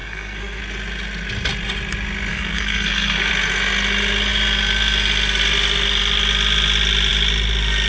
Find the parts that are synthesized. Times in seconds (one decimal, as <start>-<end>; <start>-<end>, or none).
0.0-0.6; 2.3-3.3